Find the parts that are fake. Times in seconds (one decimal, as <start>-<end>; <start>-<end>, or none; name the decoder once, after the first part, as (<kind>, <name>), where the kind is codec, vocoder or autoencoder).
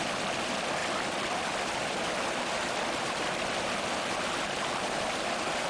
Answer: 0.8-3.6 (vocoder, BigVGAN v2)